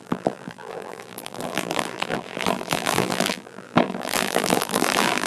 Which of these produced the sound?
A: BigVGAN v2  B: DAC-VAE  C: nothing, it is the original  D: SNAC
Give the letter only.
A